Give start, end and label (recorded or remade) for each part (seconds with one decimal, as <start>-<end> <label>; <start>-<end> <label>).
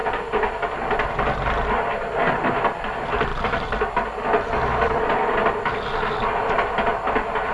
0.0-7.5 recorded